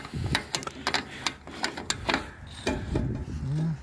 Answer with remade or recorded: recorded